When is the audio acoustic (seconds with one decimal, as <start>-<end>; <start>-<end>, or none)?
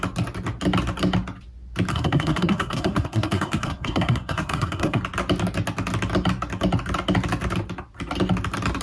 0.0-1.9; 5.0-8.8